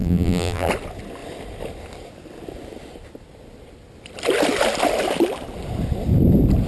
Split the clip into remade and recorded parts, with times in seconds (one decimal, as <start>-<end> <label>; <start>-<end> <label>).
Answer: 0.0-0.7 remade; 0.7-6.7 recorded